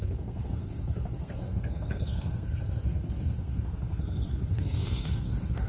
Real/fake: fake